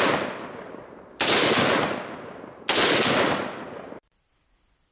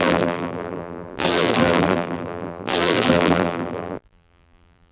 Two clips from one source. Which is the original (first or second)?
first